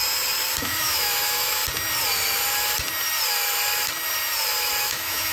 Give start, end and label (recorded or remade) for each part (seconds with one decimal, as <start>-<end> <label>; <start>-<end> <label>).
0.0-0.6 recorded; 0.6-1.6 remade; 1.6-4.8 recorded; 4.8-5.3 remade